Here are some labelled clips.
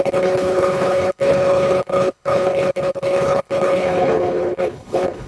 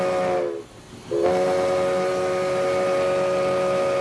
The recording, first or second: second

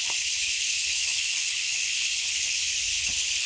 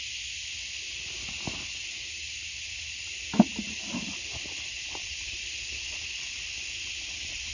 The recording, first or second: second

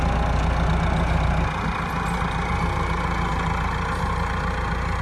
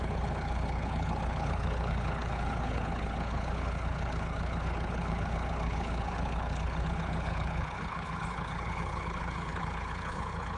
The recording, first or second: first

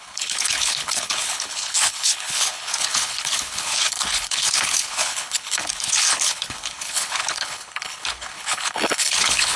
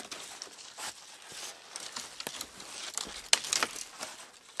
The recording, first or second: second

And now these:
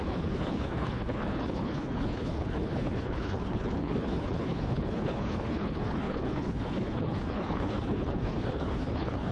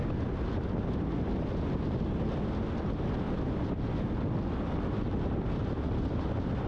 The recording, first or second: second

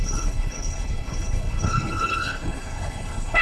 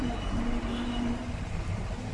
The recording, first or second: second